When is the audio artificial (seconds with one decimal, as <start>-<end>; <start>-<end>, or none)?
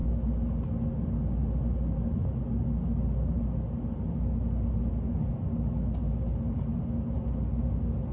none